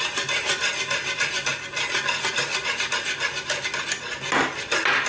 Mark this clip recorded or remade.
recorded